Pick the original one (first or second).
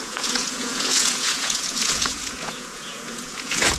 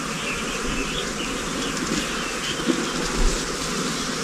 second